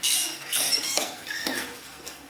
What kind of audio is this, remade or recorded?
remade